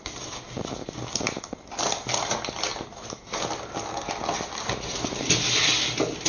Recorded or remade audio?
recorded